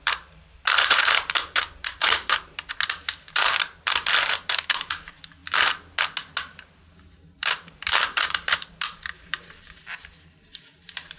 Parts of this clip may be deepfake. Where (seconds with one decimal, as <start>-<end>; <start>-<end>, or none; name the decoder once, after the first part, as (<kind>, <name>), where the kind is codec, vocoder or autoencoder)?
0.0-5.4 (vocoder, BigVGAN v2); 6.8-11.2